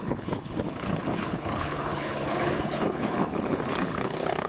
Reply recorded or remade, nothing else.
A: remade